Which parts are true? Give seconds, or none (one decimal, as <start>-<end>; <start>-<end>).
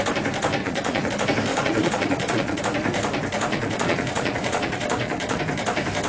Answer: 0.0-0.6; 1.1-1.5; 2.6-3.5; 5.4-6.1